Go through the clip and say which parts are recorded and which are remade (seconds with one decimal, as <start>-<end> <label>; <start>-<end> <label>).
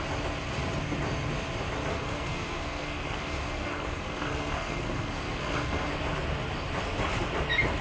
0.0-1.9 recorded; 1.9-5.9 remade; 5.9-7.8 recorded